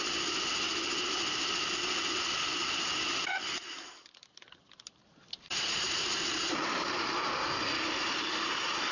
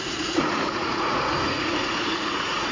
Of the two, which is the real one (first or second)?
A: first